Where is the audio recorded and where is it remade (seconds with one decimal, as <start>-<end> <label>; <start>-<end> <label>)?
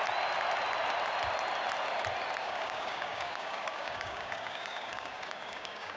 0.0-2.4 recorded; 2.4-6.0 remade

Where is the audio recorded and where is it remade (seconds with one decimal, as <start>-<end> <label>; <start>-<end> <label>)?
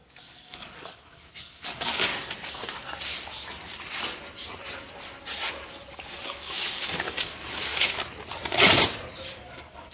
0.0-2.1 remade; 2.1-5.9 recorded; 5.9-7.6 remade; 7.6-9.3 recorded; 9.3-9.9 remade